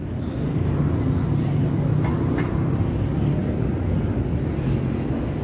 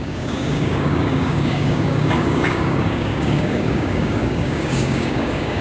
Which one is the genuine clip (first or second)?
first